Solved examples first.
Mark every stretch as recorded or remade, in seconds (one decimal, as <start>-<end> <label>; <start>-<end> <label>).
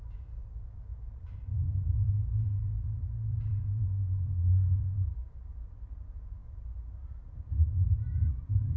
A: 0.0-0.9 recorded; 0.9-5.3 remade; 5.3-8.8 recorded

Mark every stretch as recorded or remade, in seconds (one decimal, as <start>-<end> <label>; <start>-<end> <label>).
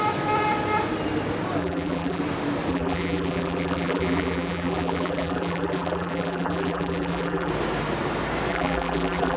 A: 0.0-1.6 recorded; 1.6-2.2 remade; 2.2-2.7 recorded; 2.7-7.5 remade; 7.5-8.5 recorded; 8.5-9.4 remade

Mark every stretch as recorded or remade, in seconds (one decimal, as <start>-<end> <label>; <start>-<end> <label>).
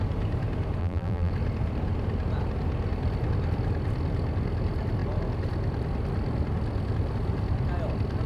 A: 0.0-0.8 recorded; 0.8-1.3 remade; 1.3-8.3 recorded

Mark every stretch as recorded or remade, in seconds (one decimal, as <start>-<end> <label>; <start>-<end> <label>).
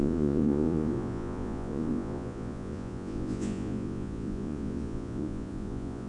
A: 0.0-6.1 remade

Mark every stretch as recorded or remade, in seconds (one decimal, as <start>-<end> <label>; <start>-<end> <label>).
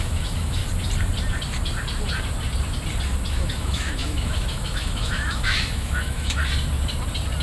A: 0.0-0.6 remade; 0.6-3.3 recorded; 3.3-6.4 remade; 6.4-7.4 recorded